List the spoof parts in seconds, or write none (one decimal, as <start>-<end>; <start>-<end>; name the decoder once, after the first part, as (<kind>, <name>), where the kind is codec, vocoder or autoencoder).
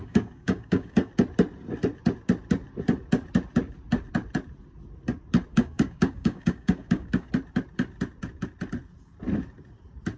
0.0-1.1 (codec, DAC); 5.5-7.3